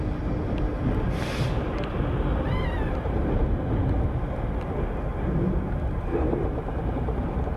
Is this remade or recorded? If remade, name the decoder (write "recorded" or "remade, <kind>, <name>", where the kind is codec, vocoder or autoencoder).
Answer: recorded